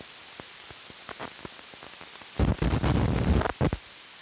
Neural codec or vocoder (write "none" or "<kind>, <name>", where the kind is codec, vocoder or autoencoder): none